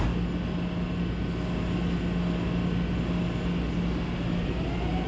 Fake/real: real